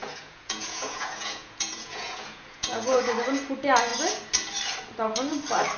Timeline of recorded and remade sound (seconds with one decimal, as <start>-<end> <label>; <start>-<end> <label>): 0.0-3.1 remade; 3.1-5.8 recorded